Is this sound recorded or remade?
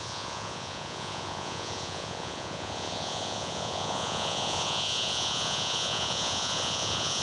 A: remade